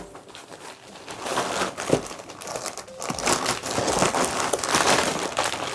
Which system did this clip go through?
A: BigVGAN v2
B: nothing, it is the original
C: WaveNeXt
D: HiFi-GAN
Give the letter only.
B